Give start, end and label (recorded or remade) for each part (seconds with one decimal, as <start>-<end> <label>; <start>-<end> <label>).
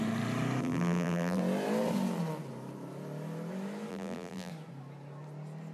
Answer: 0.0-0.6 recorded; 0.6-1.4 remade; 1.4-3.9 recorded; 3.9-4.5 remade; 4.5-5.7 recorded